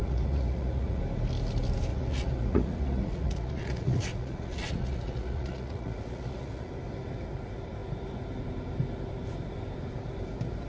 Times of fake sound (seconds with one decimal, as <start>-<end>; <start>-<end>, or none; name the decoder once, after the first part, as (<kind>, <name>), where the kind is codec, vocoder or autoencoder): 0.0-1.0 (vocoder, Vocos); 1.9-6.7